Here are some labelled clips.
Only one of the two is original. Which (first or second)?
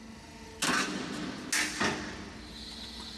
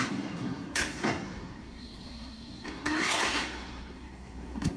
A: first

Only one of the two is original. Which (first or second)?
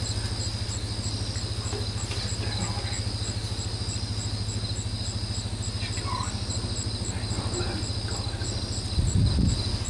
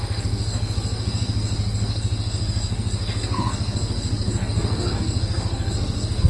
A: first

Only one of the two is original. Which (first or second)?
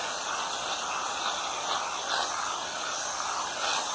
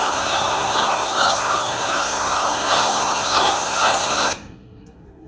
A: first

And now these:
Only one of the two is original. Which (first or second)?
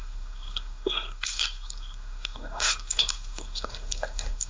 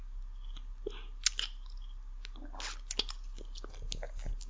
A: second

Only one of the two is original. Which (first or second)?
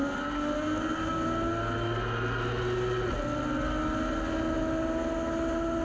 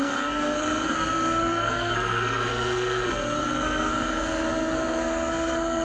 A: first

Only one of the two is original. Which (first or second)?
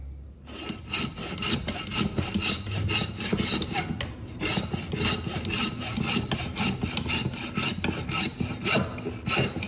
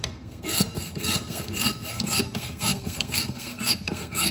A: first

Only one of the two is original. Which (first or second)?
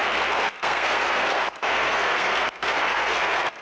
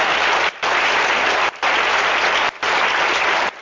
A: second